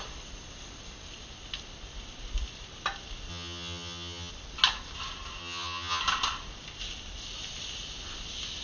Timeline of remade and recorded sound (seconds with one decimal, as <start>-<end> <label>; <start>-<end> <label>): 0.0-3.3 recorded; 3.3-4.3 remade; 4.3-5.4 recorded; 5.4-6.0 remade; 6.0-8.6 recorded